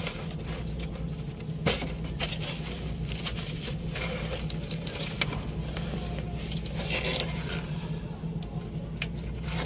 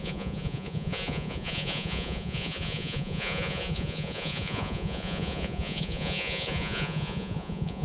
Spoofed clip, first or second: second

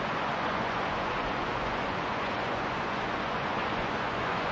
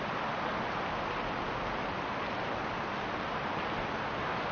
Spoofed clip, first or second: first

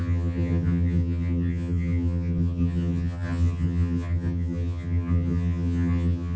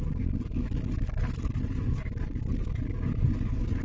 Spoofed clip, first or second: first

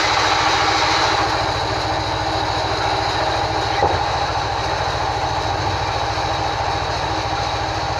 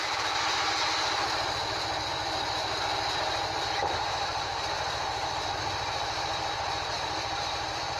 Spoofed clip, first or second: second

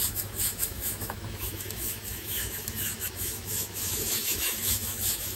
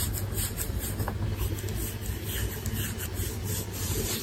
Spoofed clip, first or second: first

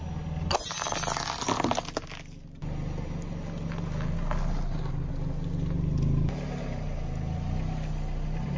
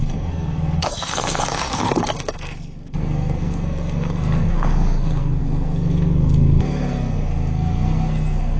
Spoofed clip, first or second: second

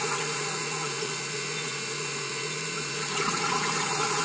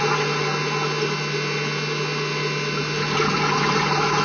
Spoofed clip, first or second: first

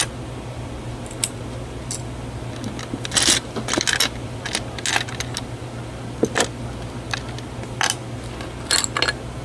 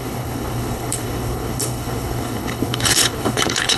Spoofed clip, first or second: second